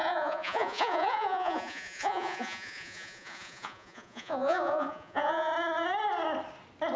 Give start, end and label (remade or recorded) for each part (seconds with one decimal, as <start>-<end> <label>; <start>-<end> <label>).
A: 0.0-5.5 remade; 5.5-7.0 recorded